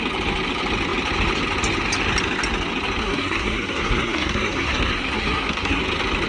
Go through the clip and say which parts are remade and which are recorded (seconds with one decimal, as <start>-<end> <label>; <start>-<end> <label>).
0.0-3.0 recorded; 3.0-5.8 remade; 5.8-6.3 recorded